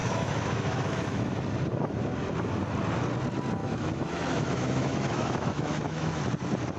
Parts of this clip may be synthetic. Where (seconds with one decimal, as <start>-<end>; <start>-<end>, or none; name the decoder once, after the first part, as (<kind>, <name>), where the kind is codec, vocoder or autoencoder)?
0.0-1.4 (autoencoder, DAC-VAE); 3.6-6.2